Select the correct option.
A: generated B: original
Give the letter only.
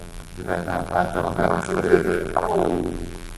A